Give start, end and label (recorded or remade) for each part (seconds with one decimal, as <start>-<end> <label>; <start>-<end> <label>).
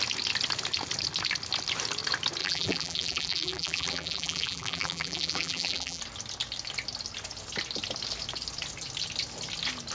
0.0-2.4 recorded; 2.4-6.0 remade; 6.0-9.9 recorded